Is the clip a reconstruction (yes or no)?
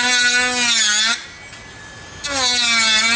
no